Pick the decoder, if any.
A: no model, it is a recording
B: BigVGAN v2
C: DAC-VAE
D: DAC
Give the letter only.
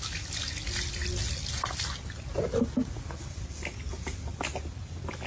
A